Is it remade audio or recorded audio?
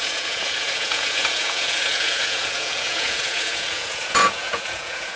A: remade